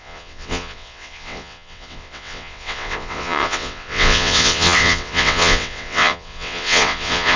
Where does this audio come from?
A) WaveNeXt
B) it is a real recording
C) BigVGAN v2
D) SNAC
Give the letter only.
A